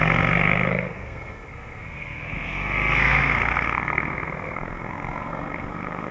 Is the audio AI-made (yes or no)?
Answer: yes